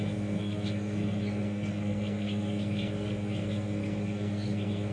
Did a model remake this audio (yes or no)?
yes